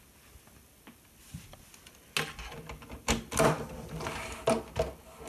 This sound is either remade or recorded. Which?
recorded